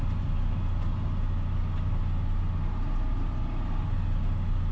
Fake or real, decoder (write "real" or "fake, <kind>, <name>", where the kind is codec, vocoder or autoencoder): real